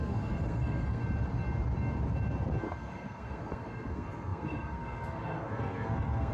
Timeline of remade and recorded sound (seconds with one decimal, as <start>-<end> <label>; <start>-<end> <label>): 0.0-1.0 remade; 1.0-2.6 recorded; 2.6-6.3 remade